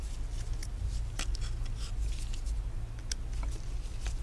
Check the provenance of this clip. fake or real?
real